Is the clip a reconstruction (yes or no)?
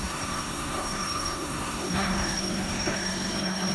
yes